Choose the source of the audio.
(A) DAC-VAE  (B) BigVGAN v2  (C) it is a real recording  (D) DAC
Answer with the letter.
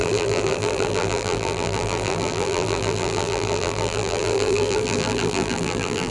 B